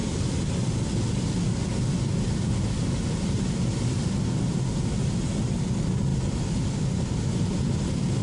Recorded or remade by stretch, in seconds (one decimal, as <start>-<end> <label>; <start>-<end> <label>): 0.0-8.2 recorded